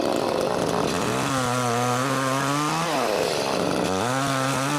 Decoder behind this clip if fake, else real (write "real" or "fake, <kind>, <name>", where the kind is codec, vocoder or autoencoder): real